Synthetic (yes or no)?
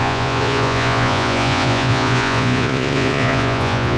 yes